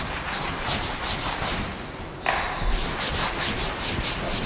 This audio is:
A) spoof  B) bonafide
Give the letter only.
B